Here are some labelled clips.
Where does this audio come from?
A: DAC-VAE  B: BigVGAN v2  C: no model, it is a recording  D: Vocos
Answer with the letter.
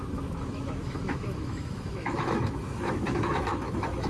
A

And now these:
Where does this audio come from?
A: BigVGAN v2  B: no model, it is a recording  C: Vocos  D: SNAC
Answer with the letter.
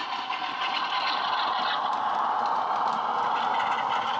B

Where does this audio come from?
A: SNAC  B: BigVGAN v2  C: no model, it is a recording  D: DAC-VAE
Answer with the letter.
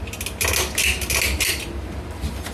C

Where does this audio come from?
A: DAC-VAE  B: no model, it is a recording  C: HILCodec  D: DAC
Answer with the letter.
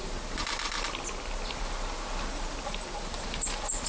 B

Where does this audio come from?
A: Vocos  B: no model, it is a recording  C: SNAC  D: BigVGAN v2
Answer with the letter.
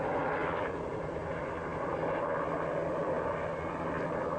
B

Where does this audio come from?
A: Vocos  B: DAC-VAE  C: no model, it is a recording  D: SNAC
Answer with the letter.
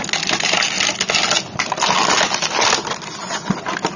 C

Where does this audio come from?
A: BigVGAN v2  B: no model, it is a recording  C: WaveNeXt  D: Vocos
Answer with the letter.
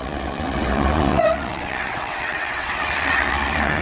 C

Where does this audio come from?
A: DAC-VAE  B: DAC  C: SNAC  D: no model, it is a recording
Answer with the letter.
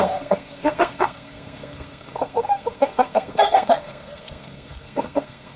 C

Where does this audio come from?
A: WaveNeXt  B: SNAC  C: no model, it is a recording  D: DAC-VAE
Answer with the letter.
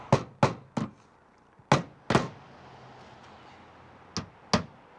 C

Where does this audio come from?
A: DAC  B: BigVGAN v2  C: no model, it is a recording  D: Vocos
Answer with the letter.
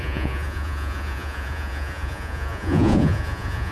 D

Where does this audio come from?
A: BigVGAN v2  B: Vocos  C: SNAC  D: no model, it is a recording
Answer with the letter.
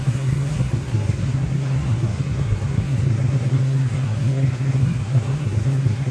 C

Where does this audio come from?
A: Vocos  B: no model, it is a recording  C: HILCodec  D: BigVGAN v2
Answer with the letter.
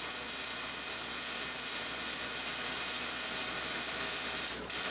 B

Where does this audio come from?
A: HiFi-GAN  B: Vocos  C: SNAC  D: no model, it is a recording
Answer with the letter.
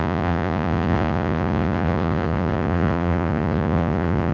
B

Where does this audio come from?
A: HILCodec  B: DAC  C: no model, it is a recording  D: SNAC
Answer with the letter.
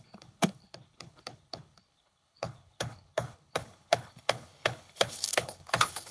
A